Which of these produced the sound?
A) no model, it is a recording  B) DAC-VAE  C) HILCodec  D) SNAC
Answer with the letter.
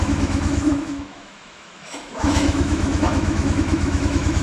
B